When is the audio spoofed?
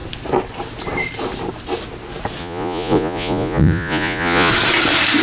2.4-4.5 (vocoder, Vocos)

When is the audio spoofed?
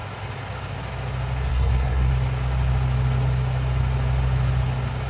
1.5-2.1 (codec, SNAC)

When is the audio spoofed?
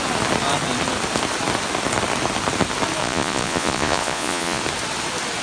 3.0-4.6 (vocoder, Vocos)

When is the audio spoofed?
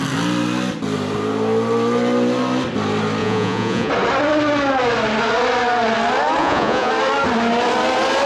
3.2-3.9 (vocoder, Vocos); 6.4-6.9